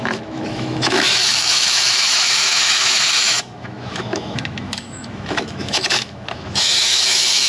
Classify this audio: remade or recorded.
remade